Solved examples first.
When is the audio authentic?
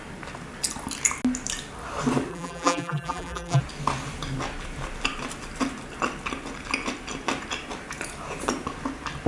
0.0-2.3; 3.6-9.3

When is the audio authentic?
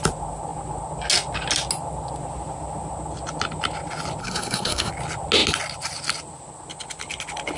0.0-4.2; 4.9-7.6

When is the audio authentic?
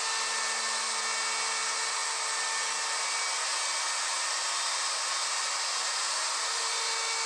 0.0-7.3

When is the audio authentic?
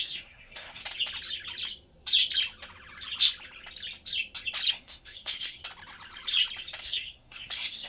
0.8-4.7; 5.6-6.8